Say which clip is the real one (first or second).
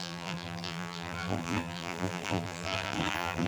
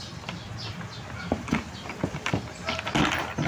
second